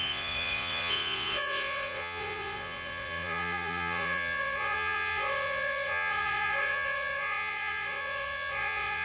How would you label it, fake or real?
fake